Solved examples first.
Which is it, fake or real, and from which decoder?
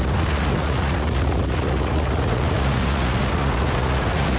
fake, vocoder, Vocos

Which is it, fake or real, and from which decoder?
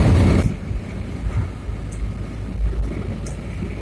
real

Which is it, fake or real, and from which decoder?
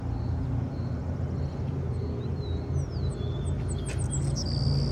real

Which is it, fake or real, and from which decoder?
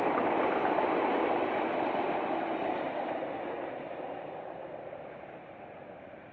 real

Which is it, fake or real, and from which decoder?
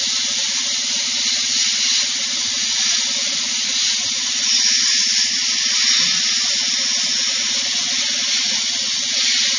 real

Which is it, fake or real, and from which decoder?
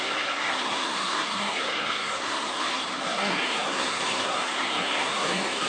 fake, codec, SNAC